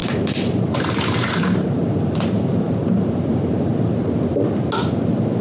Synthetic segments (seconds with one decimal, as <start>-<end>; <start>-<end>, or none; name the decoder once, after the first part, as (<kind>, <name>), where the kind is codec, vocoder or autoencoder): 0.0-3.7 (vocoder, BigVGAN v2)